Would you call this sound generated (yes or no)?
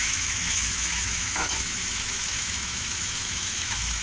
yes